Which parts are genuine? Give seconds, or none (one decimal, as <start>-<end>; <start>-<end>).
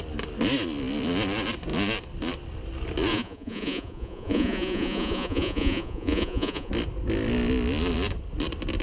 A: 0.0-3.1; 6.7-8.8